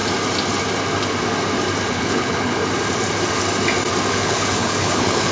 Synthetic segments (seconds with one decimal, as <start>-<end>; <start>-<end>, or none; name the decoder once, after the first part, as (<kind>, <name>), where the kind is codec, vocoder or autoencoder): 1.9-2.6 (codec, HILCodec); 4.1-5.3